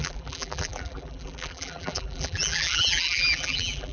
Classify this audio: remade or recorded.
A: remade